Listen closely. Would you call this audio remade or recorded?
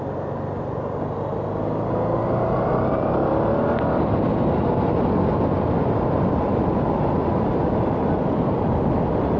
recorded